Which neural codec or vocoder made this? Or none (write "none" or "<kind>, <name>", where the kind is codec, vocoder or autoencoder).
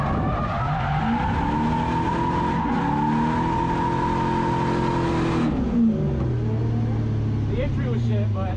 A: none